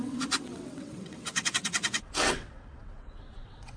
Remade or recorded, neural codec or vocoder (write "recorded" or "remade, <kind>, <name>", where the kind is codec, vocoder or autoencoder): remade, vocoder, WaveNeXt